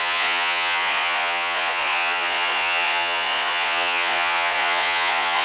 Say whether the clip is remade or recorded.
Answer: remade